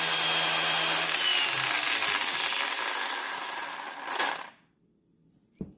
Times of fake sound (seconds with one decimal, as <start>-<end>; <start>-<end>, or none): none